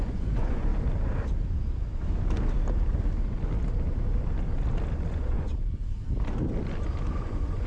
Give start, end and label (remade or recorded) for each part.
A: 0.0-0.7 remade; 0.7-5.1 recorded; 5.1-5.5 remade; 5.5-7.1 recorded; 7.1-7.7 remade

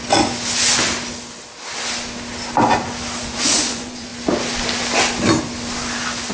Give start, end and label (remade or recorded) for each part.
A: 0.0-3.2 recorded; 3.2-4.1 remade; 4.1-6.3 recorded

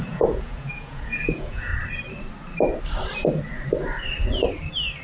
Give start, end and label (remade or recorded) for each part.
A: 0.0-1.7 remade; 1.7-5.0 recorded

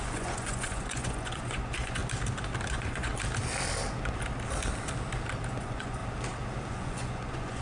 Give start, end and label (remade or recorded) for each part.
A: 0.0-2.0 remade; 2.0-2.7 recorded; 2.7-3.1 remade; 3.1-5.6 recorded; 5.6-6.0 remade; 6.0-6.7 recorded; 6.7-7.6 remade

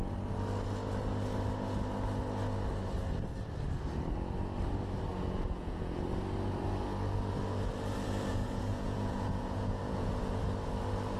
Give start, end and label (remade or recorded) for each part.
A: 0.0-5.1 recorded; 5.1-6.0 remade; 6.0-8.3 recorded; 8.3-10.4 remade; 10.4-11.2 recorded